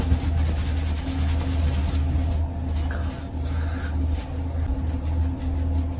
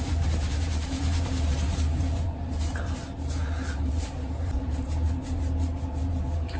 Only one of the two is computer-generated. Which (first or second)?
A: second